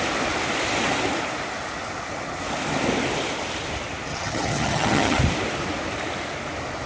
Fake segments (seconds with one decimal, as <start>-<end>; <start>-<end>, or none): 4.1-5.2